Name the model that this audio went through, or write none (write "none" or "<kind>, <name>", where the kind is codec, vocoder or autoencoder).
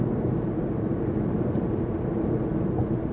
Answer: none